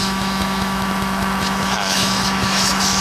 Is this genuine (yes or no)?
no